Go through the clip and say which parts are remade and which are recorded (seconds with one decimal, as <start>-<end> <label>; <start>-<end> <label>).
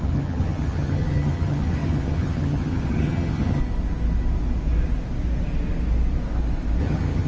0.0-3.6 remade; 3.6-6.8 recorded; 6.8-7.3 remade